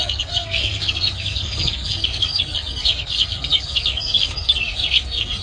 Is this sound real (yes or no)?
no